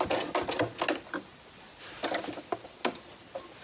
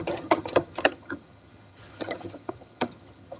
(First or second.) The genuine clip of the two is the first